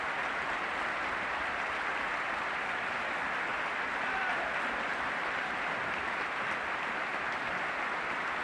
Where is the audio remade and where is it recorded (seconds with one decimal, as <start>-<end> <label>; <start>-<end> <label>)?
0.0-4.9 recorded; 4.9-7.1 remade; 7.1-8.4 recorded